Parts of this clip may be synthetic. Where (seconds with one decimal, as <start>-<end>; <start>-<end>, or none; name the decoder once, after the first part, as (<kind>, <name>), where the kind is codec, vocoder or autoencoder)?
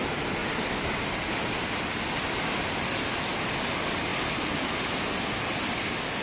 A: none